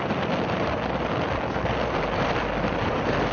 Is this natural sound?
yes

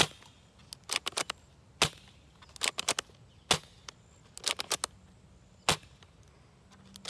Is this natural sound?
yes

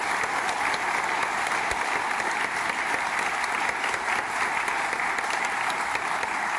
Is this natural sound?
yes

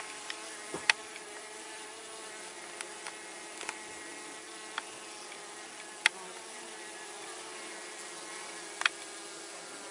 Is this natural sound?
yes